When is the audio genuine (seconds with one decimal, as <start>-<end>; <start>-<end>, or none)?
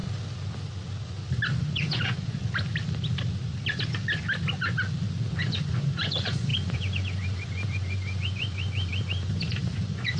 0.0-1.6; 2.4-5.3